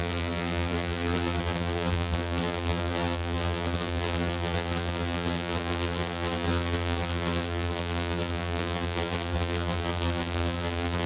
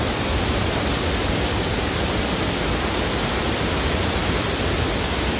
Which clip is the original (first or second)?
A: second